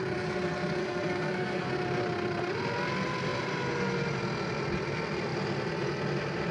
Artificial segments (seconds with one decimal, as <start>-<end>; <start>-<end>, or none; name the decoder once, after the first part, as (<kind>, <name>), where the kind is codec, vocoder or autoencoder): 0.8-1.7 (codec, SNAC)